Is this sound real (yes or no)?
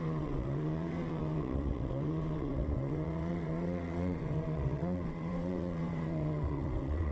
no